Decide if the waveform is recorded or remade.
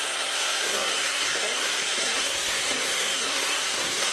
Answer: remade